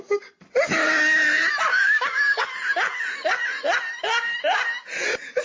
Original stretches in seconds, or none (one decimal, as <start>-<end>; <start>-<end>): 0.0-1.7; 2.4-5.4